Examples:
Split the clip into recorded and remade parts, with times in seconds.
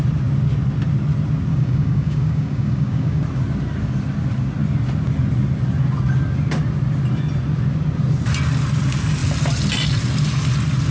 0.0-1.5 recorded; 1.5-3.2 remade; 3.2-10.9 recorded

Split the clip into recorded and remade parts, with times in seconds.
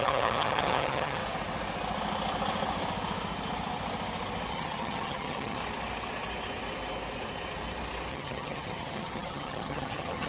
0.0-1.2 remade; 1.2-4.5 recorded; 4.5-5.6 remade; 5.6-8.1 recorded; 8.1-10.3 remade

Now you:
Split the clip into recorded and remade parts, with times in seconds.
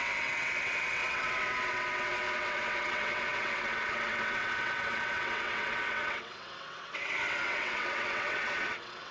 0.0-9.1 remade